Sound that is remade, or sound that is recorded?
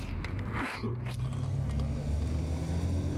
recorded